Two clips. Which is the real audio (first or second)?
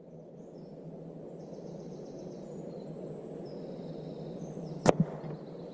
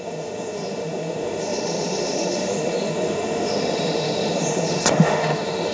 first